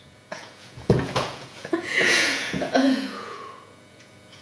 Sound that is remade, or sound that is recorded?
remade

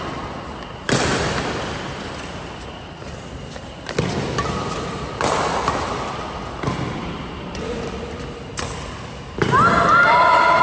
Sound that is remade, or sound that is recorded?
recorded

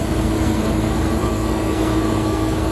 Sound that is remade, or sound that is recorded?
remade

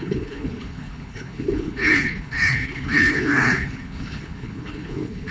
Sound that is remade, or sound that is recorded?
remade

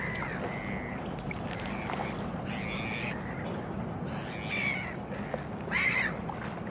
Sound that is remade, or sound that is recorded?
recorded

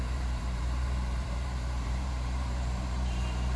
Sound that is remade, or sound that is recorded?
remade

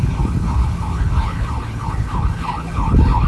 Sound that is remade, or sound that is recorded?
remade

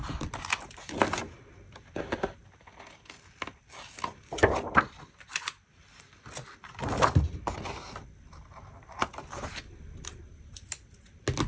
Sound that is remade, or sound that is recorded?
recorded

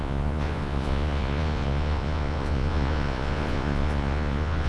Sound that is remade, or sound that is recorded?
remade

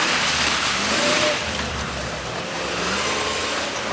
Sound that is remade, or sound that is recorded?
remade